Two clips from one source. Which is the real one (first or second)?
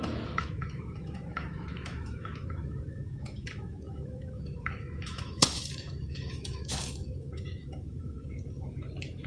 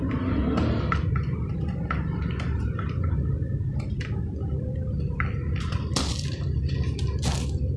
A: second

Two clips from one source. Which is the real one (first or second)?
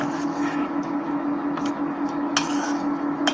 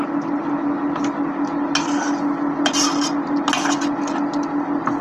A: second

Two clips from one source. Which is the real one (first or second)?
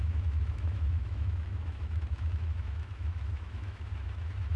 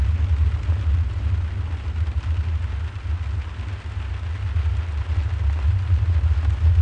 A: second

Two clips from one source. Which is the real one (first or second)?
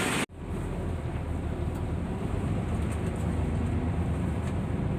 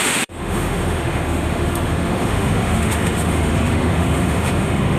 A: first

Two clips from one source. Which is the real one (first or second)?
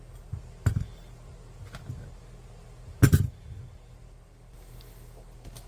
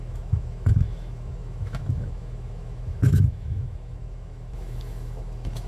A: first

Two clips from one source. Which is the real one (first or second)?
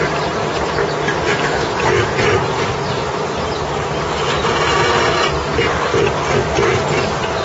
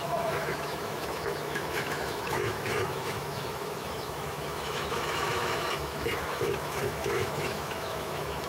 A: first